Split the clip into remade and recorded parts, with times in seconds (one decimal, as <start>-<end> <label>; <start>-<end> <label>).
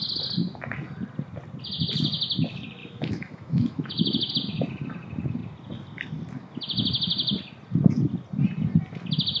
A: 0.0-2.8 recorded; 2.8-4.3 remade; 4.3-9.4 recorded